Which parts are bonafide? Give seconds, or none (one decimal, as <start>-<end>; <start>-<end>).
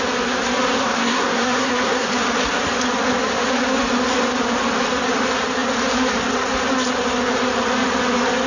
0.0-0.8; 2.1-8.5